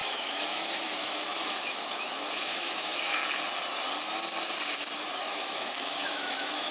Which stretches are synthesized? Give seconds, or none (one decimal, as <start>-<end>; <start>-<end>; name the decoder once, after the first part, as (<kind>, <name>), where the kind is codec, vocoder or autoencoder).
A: 0.0-3.2 (autoencoder, DAC-VAE); 5.2-6.7